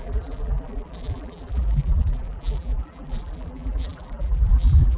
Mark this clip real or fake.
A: fake